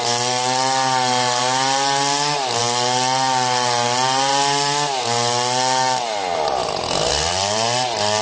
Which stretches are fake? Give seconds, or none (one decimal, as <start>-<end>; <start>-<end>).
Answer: none